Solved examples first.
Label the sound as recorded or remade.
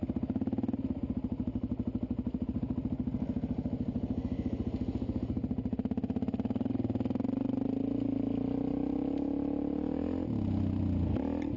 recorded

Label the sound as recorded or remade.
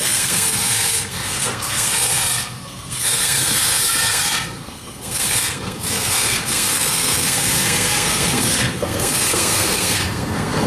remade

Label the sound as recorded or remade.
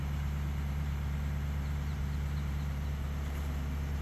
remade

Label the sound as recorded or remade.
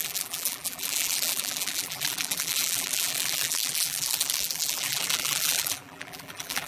remade